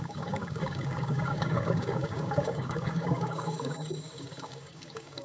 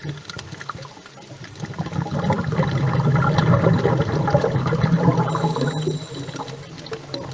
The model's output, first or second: first